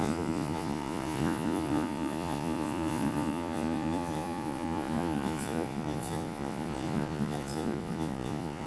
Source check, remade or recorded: remade